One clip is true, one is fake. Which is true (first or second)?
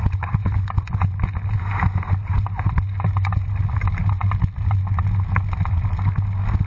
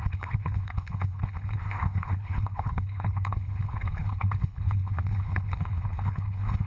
first